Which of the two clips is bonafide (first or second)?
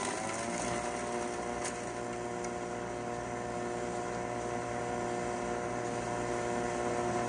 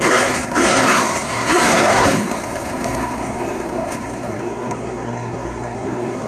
first